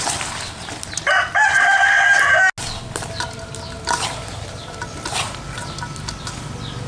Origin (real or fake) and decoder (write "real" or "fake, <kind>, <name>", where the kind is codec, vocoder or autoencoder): real